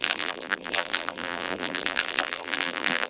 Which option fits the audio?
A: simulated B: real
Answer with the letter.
A